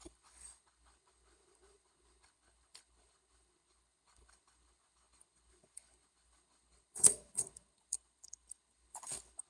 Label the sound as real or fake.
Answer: fake